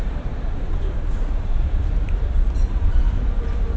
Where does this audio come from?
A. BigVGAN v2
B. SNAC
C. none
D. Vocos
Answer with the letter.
A